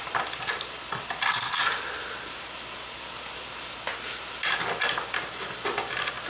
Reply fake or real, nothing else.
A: real